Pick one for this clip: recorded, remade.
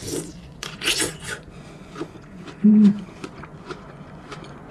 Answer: remade